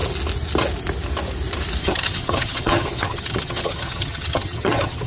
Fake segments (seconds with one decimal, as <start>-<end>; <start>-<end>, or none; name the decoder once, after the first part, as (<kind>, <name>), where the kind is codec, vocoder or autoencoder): 1.8-5.1 (vocoder, HiFi-GAN)